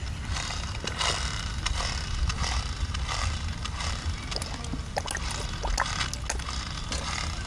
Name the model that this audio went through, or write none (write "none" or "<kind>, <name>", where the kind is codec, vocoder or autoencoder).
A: none